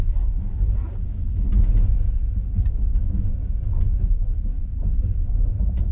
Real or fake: real